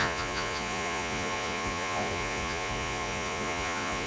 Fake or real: fake